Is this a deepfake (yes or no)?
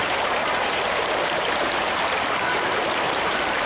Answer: yes